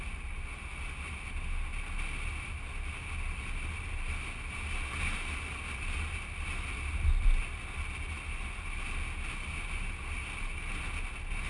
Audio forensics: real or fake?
real